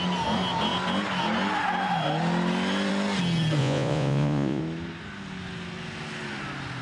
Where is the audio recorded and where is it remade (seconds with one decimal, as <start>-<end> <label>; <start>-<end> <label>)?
0.0-3.6 recorded; 3.6-4.6 remade; 4.6-6.8 recorded